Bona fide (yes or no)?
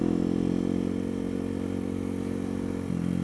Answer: yes